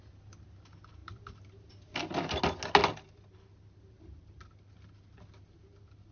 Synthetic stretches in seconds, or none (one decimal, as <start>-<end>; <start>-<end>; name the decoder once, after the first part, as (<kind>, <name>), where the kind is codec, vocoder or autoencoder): 1.0-2.4 (vocoder, BigVGAN v2)